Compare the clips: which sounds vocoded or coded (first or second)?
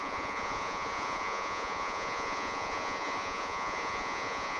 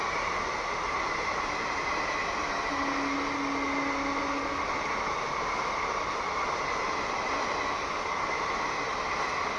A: first